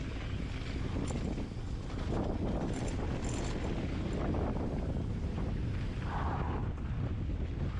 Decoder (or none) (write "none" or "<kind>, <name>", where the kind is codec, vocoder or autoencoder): none